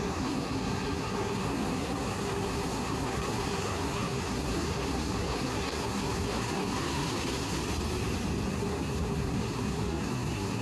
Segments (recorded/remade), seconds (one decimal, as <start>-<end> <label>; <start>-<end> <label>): 0.0-7.6 remade; 7.6-8.5 recorded; 8.5-10.6 remade